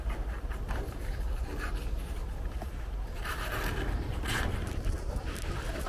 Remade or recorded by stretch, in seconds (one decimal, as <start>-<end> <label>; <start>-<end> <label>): 0.0-2.2 recorded; 2.2-3.3 remade; 3.3-5.9 recorded